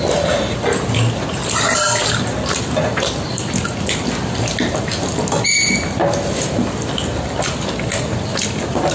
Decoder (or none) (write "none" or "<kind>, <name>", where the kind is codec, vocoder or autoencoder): none